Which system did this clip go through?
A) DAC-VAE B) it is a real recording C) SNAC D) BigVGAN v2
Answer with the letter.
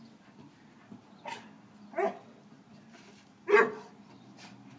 B